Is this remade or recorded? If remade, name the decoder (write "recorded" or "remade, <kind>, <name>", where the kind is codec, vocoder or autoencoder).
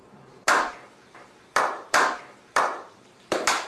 remade, vocoder, BigVGAN v2